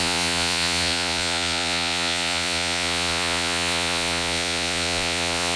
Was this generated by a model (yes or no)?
yes